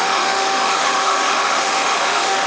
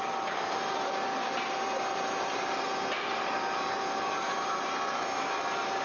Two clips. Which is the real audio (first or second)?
second